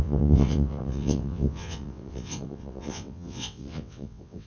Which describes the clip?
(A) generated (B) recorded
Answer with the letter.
A